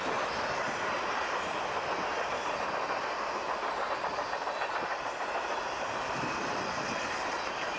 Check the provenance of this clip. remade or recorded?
recorded